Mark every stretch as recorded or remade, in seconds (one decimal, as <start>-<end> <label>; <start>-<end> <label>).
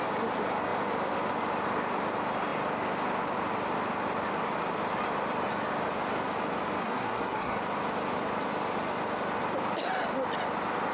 0.0-6.8 recorded; 6.8-7.6 remade; 7.6-10.9 recorded